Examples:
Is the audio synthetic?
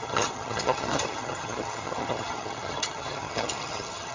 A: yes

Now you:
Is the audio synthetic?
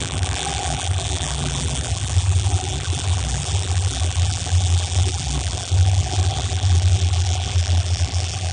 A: yes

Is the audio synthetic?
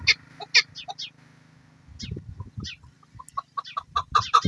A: no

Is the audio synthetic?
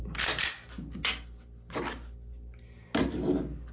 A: no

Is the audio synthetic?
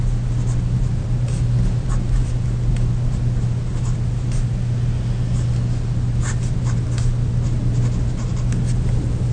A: no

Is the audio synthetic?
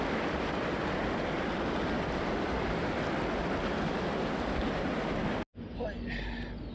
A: no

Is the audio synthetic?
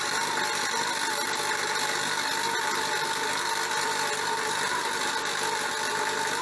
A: no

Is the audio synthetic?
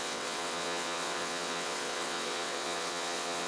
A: yes